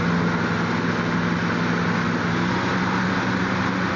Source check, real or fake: real